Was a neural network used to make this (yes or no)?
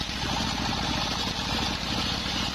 no